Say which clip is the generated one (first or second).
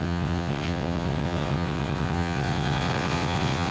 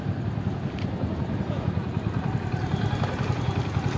first